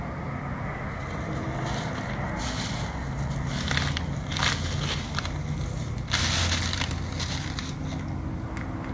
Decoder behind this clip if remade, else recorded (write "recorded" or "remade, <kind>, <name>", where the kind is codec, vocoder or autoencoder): recorded